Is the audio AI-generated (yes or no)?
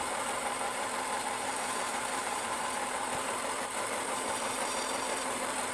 yes